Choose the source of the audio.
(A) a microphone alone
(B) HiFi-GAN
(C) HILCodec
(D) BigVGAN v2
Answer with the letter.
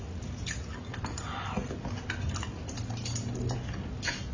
A